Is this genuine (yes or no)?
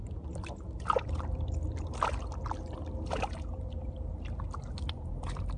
yes